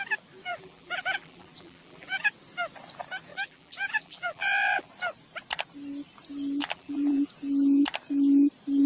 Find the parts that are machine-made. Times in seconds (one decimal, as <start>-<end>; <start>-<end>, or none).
0.5-2.3; 3.3-4.9; 6.6-7.3